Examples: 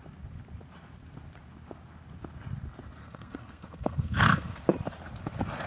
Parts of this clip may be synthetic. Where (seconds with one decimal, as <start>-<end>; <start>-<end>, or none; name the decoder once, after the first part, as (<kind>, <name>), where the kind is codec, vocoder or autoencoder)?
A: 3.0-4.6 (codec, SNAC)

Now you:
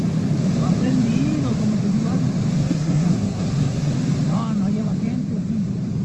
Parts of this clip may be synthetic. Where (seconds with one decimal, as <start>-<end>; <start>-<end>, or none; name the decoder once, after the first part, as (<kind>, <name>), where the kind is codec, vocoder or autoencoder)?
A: 2.6-3.9 (codec, SNAC)

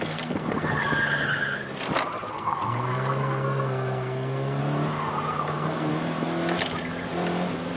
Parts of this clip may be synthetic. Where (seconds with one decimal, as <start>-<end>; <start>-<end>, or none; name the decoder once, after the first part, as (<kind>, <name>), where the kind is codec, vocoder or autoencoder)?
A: 0.0-0.8 (codec, SNAC); 2.3-4.6; 5.3-5.9

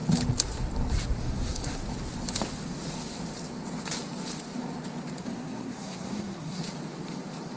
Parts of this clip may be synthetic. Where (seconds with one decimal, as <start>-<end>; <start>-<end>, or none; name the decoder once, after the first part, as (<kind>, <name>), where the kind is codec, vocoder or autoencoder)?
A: 1.2-1.8 (codec, SNAC); 5.2-6.6